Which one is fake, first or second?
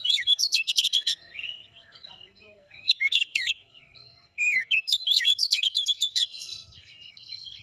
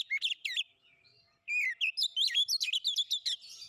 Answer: first